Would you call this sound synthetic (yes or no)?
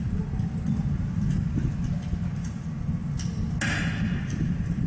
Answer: no